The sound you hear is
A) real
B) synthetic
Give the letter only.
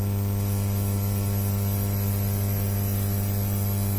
A